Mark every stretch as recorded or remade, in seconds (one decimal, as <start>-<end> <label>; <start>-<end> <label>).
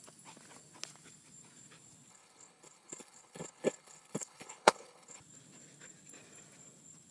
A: 0.0-2.1 recorded; 2.1-5.2 remade; 5.2-7.1 recorded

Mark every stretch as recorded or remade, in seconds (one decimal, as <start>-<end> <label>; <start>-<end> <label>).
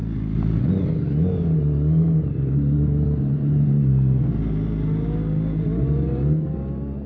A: 0.0-7.1 recorded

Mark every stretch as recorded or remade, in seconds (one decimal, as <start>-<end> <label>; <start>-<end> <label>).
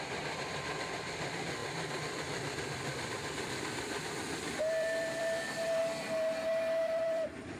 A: 0.0-5.8 remade; 5.8-6.8 recorded; 6.8-7.6 remade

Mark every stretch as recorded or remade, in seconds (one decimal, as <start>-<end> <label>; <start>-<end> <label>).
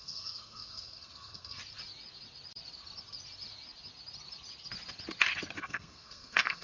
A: 0.0-1.6 remade; 1.6-5.6 recorded; 5.6-6.6 remade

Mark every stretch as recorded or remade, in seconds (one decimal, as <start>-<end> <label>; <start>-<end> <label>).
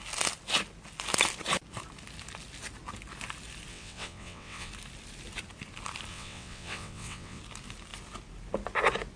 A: 0.0-3.7 recorded; 3.7-4.7 remade; 4.7-6.1 recorded; 6.1-7.4 remade; 7.4-9.2 recorded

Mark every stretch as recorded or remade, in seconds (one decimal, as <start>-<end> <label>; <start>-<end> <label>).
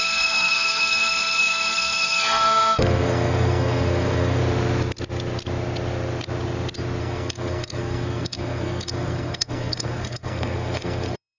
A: 0.0-4.4 remade; 4.4-7.0 recorded; 7.0-11.4 remade